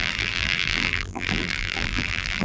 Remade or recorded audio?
remade